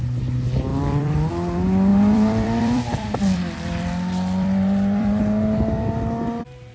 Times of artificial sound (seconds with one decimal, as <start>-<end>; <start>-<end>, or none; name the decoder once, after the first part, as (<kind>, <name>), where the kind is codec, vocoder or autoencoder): 0.7-1.3 (vocoder, BigVGAN v2); 1.9-5.2